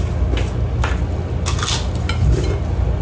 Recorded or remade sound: recorded